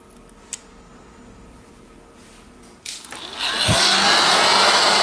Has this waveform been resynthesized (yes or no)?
no